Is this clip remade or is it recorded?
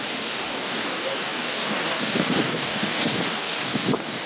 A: remade